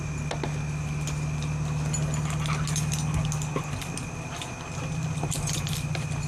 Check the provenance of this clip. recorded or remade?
recorded